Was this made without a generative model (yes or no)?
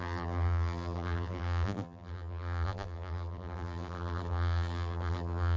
no